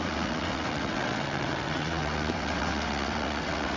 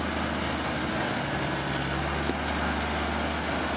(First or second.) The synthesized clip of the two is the first